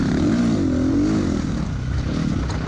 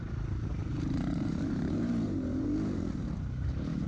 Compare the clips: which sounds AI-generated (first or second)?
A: second